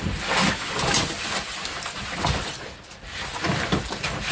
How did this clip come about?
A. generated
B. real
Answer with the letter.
B